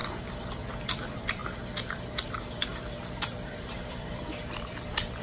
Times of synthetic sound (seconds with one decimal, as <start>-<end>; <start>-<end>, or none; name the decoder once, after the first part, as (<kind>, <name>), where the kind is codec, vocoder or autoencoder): 0.6-5.2 (vocoder, BigVGAN v2)